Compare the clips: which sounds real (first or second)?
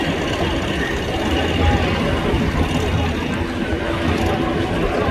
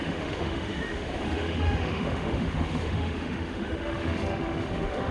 first